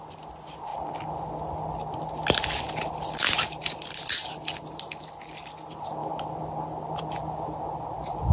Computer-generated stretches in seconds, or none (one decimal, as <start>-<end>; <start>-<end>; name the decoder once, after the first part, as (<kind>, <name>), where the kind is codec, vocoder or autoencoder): none